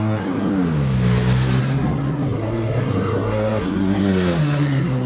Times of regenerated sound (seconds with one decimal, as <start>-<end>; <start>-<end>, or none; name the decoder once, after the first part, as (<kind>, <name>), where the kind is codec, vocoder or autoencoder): 0.0-0.5 (codec, SNAC); 1.6-5.1